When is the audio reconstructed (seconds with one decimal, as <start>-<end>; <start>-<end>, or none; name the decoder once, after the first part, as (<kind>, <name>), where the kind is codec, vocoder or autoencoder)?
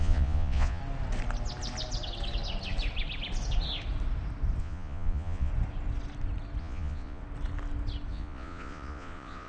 0.0-0.8 (vocoder, Vocos); 4.6-5.5; 6.6-7.2; 8.1-9.5